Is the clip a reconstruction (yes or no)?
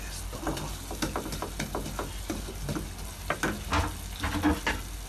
no